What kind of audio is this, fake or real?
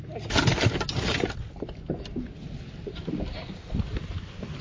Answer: real